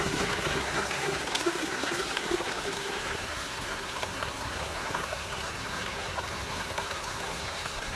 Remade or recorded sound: remade